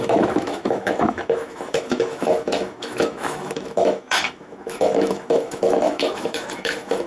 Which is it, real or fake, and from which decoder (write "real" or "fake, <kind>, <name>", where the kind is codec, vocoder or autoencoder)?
fake, autoencoder, DAC-VAE